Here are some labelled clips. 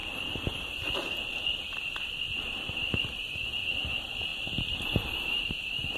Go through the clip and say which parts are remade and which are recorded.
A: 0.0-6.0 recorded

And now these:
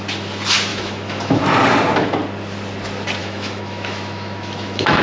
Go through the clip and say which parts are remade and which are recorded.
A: 0.0-0.7 recorded; 0.7-1.4 remade; 1.4-3.2 recorded; 3.2-5.0 remade